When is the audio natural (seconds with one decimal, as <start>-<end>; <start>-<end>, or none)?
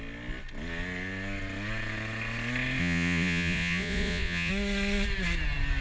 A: 0.0-2.8; 4.5-5.8